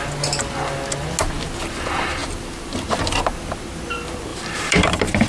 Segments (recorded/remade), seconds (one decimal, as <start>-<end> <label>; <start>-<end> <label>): 0.0-2.2 recorded; 2.2-3.2 remade; 3.2-4.3 recorded; 4.3-5.3 remade